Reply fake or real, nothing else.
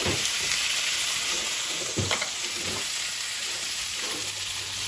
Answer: fake